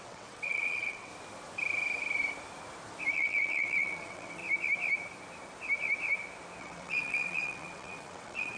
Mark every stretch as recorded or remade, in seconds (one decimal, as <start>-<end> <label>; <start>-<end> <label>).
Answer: 0.0-1.1 remade; 1.1-3.1 recorded; 3.1-4.4 remade; 4.4-6.6 recorded; 6.6-8.6 remade